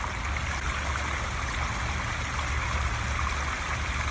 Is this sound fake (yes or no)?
no